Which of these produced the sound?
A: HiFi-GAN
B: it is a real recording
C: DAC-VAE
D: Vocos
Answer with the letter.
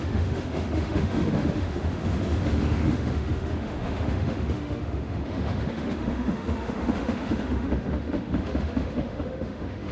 C